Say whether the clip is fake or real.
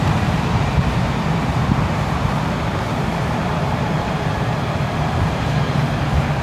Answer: fake